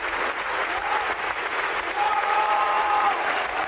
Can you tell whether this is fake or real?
fake